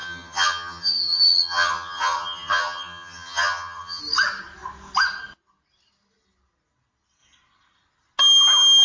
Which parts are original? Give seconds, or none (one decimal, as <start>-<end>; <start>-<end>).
4.0-8.8